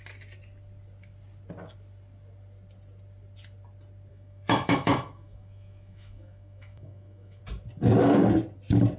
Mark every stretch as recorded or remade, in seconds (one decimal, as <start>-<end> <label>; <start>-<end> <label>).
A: 0.0-4.1 recorded; 4.1-7.4 remade; 7.4-9.0 recorded